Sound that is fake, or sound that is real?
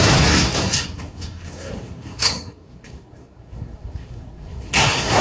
fake